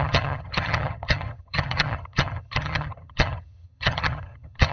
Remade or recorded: remade